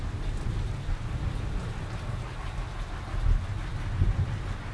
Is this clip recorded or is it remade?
recorded